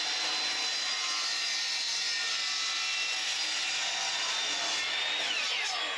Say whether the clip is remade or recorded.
recorded